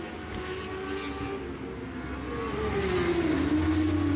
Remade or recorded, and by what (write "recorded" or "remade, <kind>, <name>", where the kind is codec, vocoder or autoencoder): recorded